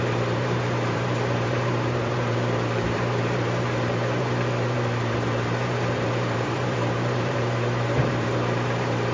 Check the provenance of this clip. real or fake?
fake